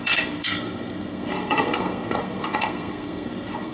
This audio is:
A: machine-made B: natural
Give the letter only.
A